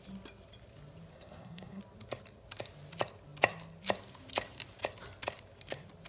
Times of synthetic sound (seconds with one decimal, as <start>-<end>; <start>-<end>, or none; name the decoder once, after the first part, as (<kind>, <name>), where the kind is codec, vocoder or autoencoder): 1.1-1.8 (codec, SNAC)